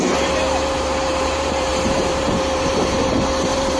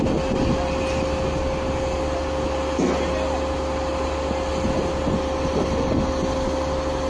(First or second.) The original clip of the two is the second